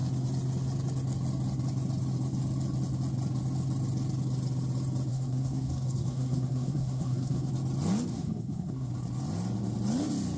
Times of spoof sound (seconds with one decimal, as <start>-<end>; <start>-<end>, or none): 5.1-7.5; 8.1-8.9